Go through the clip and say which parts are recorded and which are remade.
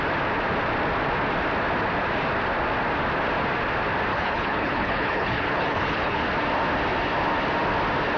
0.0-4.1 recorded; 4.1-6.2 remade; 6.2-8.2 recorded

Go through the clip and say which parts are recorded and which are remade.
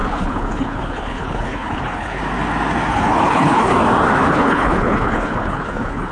0.0-2.2 remade; 2.2-2.9 recorded; 2.9-3.7 remade; 3.7-4.3 recorded; 4.3-6.1 remade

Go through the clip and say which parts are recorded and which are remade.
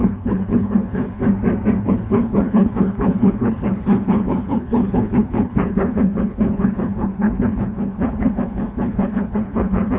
0.0-1.2 remade; 1.2-1.8 recorded; 1.8-10.0 remade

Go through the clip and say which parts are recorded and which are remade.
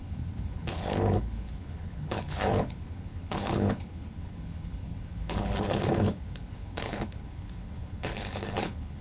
0.0-9.0 remade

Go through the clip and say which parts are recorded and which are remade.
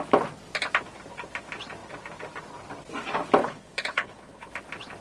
0.0-3.4 recorded; 3.4-4.5 remade; 4.5-5.0 recorded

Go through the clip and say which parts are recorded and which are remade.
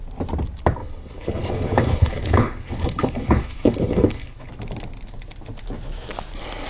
0.0-0.8 recorded; 0.8-4.5 remade; 4.5-6.7 recorded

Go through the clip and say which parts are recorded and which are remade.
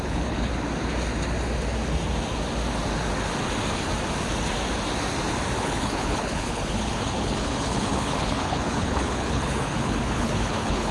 0.0-0.5 remade; 0.5-5.6 recorded; 5.6-10.9 remade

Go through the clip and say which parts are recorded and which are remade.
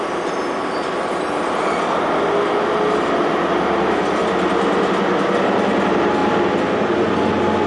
0.0-7.7 recorded